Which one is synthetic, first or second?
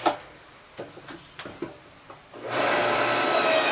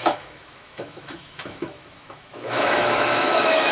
second